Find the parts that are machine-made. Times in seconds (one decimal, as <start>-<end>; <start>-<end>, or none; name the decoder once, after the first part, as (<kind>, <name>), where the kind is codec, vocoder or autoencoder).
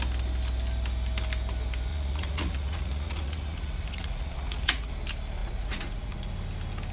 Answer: 1.9-4.9 (vocoder, Vocos); 5.4-6.3